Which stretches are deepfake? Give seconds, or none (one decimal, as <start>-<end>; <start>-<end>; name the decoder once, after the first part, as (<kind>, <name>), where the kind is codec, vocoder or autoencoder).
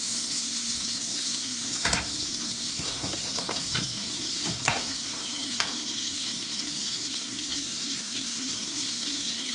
0.0-9.5 (codec, SNAC)